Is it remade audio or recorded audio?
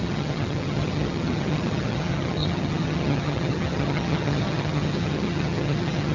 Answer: remade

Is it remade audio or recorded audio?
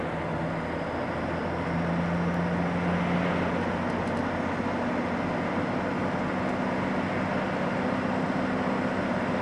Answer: recorded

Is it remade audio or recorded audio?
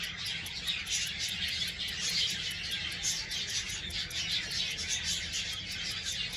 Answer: recorded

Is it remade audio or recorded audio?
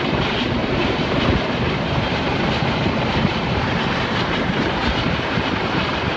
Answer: remade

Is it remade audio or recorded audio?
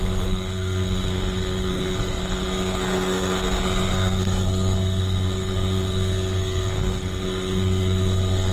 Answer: remade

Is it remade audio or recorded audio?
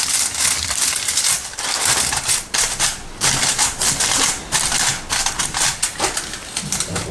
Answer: recorded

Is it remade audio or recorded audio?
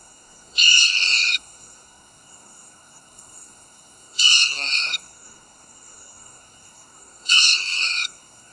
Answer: remade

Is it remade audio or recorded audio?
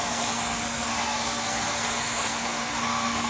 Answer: remade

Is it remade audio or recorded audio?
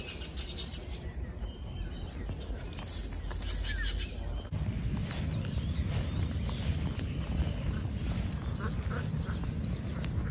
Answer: recorded